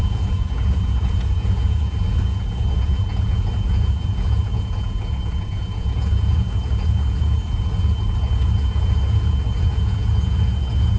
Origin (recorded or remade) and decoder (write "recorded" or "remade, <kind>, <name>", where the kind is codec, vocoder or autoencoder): remade, vocoder, Vocos